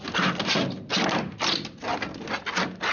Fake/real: real